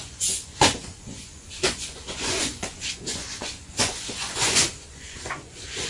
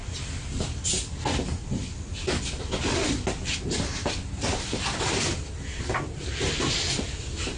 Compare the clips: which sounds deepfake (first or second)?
first